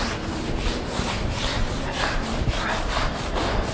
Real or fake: real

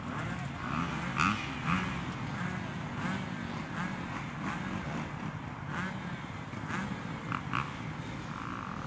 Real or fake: real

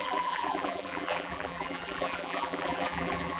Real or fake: fake